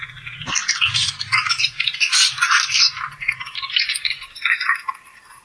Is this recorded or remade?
recorded